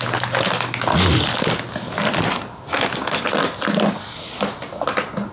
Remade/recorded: recorded